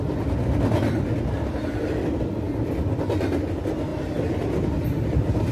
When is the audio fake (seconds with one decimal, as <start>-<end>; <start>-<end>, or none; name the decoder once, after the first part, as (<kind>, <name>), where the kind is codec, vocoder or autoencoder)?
none